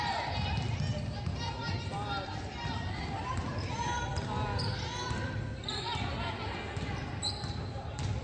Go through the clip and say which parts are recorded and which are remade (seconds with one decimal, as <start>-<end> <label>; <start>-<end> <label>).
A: 0.0-8.2 recorded